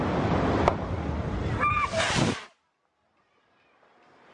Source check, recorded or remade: recorded